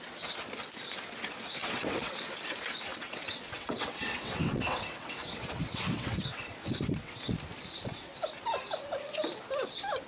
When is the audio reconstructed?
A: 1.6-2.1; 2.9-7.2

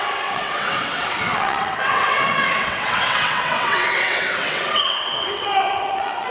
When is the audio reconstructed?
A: 0.0-6.3